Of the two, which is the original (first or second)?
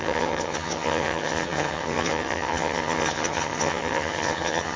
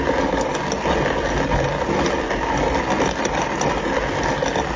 second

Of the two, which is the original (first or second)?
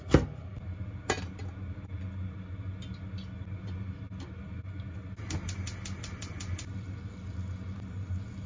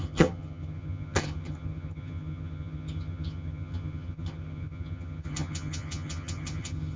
first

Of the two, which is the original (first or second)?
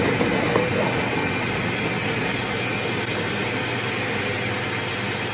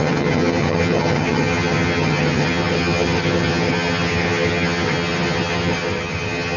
first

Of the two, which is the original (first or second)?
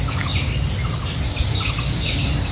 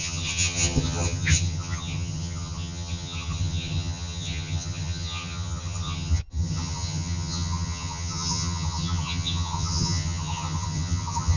first